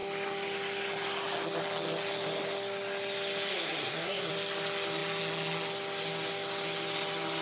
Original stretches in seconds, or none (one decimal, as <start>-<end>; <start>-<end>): 0.0-3.5; 4.3-7.4